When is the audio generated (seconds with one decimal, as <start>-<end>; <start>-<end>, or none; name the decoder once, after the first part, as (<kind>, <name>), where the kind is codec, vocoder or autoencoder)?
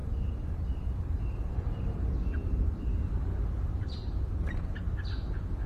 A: 0.0-1.8 (vocoder, BigVGAN v2); 2.4-4.9